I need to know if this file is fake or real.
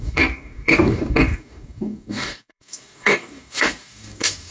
fake